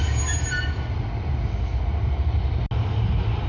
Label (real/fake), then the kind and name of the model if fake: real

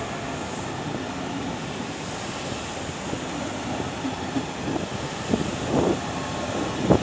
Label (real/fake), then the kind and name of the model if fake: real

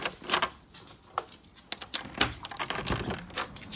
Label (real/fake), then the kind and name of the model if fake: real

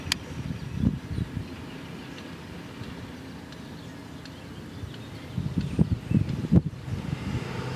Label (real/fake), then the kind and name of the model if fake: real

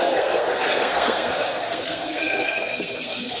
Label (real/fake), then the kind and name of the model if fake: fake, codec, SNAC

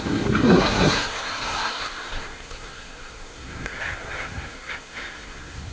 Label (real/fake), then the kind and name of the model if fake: fake, codec, SNAC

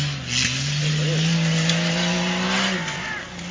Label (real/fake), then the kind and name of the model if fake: real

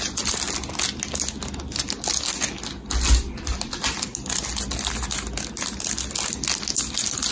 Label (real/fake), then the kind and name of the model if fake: real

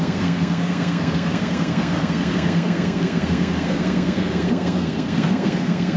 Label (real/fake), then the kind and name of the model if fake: fake, codec, SNAC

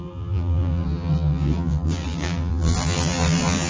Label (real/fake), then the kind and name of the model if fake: fake, vocoder, BigVGAN v2